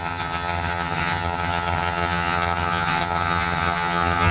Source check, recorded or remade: remade